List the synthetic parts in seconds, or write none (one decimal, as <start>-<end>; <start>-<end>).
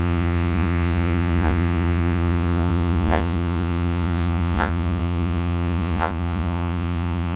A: 0.0-7.4